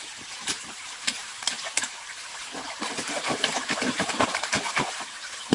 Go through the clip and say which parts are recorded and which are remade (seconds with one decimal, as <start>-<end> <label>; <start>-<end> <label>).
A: 0.0-5.5 remade